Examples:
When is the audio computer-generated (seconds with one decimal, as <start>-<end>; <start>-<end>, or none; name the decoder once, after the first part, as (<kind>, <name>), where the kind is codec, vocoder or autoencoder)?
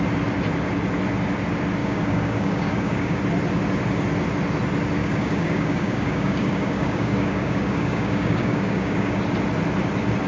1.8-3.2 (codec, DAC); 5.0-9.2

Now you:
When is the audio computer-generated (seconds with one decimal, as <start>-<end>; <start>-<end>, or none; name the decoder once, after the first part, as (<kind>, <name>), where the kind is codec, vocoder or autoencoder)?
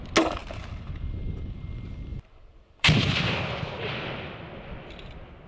2.1-3.3 (vocoder, BigVGAN v2)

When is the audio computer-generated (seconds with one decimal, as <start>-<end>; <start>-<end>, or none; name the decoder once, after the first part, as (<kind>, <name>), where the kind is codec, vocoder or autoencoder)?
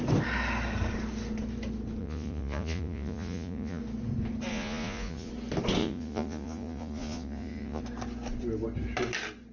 2.0-3.8 (vocoder, Vocos); 4.5-5.3; 5.8-7.8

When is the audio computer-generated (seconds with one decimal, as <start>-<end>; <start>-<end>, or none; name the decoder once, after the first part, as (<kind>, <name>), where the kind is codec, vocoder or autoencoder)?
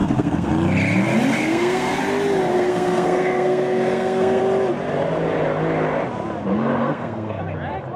0.0-0.5 (codec, SNAC); 1.4-2.0; 2.5-4.4; 6.8-7.4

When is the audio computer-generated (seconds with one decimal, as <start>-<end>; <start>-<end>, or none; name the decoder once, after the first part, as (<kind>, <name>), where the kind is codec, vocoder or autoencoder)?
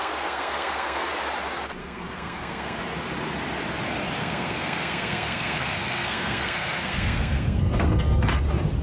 0.0-1.1 (codec, SNAC); 1.8-2.8; 4.2-8.4